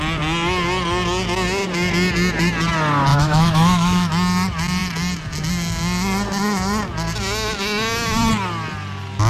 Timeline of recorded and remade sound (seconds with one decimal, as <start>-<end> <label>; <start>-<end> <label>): 0.0-3.1 recorded; 3.1-4.1 remade; 4.1-9.3 recorded